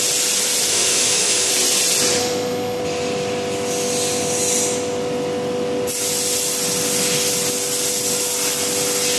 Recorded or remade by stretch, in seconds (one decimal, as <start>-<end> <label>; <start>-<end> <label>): 0.0-0.7 recorded; 0.7-1.5 remade; 1.5-2.2 recorded; 2.2-2.8 remade; 2.8-9.2 recorded